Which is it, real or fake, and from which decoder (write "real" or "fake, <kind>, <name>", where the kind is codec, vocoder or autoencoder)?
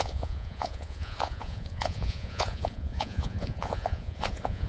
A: fake, vocoder, Vocos